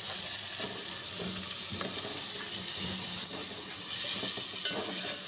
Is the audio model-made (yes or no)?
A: no